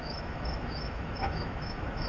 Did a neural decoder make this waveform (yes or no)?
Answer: yes